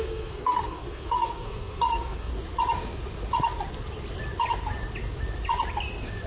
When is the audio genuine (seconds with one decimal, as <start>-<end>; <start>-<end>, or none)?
2.3-6.3